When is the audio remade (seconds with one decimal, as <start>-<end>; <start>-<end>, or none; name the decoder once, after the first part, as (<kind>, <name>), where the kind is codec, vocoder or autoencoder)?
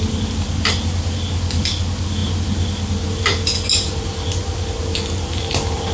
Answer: none